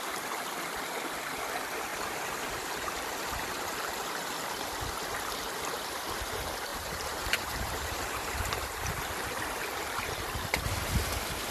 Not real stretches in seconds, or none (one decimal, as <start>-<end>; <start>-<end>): 1.9-3.6; 6.7-8.9